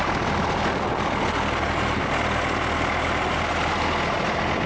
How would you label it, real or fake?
real